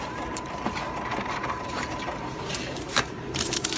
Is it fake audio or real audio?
fake